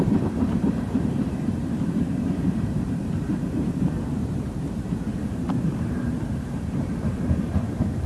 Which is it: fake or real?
fake